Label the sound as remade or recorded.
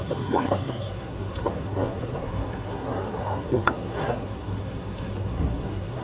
remade